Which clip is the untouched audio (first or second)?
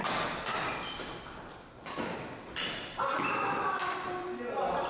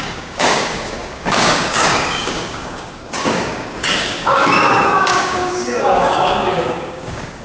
first